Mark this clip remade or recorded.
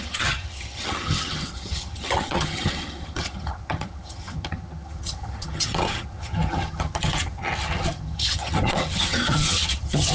remade